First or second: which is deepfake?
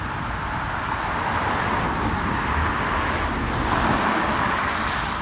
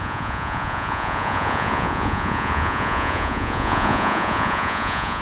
second